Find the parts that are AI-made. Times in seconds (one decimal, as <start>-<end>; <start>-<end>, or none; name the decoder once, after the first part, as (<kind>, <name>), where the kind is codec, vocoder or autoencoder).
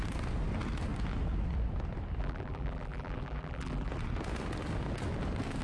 2.2-3.9 (vocoder, BigVGAN v2)